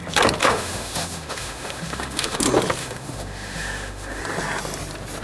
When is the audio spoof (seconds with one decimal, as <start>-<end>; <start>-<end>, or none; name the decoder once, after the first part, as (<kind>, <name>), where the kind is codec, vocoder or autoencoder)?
0.4-2.4 (autoencoder, DAC-VAE); 2.8-4.2